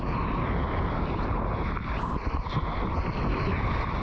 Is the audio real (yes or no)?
yes